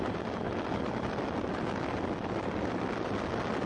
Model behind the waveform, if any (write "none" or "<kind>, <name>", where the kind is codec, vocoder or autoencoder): none